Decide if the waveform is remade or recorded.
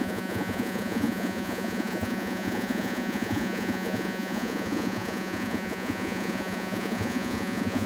remade